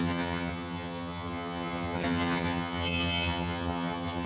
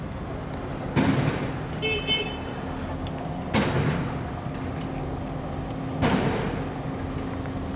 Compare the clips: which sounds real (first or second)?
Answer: second